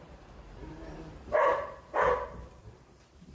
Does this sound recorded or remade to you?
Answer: remade